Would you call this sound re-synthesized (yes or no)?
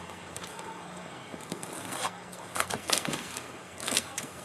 yes